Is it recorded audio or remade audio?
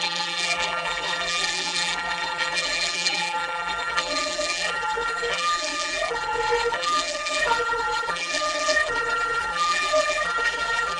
remade